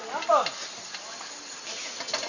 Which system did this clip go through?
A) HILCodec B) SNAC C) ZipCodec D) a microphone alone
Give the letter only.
D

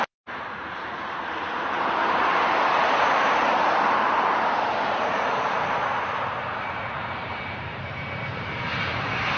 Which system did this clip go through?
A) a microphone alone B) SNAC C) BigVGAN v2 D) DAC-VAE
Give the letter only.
C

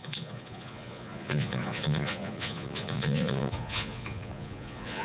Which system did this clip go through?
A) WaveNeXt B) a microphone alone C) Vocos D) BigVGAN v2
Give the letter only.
C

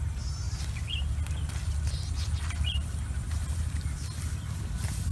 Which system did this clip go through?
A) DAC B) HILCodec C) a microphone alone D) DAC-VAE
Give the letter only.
C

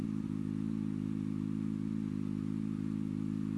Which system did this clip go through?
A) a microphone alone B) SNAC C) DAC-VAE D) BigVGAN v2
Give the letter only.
A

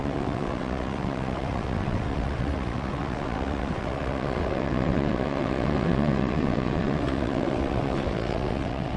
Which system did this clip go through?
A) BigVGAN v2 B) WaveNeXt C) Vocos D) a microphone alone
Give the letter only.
B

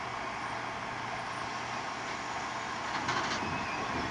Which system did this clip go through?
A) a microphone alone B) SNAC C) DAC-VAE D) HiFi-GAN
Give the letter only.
A